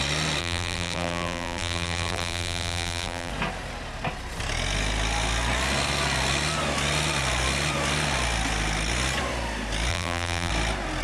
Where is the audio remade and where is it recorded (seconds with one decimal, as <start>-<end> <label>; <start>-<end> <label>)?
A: 0.0-0.4 recorded; 0.4-3.3 remade; 3.3-9.9 recorded; 9.9-10.5 remade; 10.5-11.0 recorded